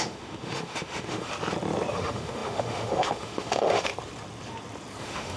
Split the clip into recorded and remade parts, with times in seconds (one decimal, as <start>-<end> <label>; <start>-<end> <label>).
0.0-1.3 remade; 1.3-1.9 recorded; 1.9-3.9 remade; 3.9-5.0 recorded; 5.0-5.4 remade